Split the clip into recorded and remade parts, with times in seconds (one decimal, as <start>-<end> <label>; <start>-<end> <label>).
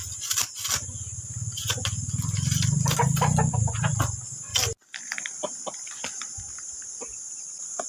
0.0-7.9 recorded